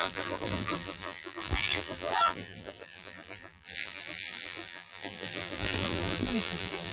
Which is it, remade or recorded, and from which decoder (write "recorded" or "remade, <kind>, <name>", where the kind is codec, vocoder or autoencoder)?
remade, vocoder, BigVGAN v2